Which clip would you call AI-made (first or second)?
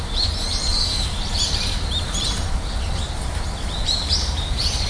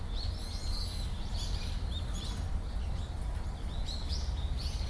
first